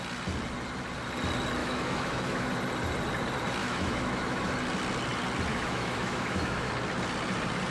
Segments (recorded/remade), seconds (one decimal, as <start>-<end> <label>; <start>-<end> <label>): 0.0-1.6 recorded; 1.6-2.5 remade; 2.5-3.6 recorded; 3.6-4.5 remade; 4.5-5.5 recorded; 5.5-6.7 remade; 6.7-7.7 recorded